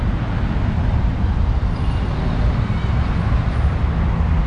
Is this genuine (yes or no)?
yes